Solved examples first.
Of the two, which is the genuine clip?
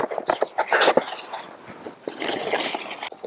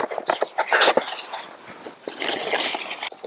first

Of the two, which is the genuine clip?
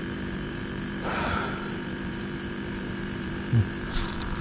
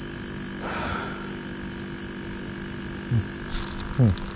second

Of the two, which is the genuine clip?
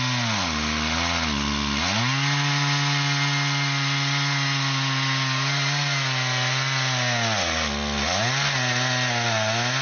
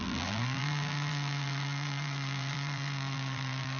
first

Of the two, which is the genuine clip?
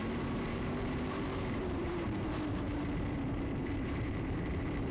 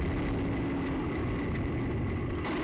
second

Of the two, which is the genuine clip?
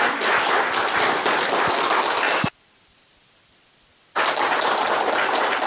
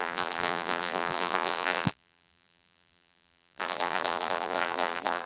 first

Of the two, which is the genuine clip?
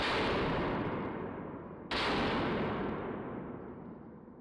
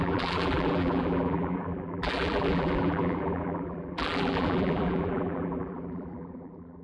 first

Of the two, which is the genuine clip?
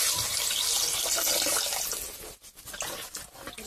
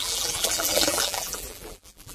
first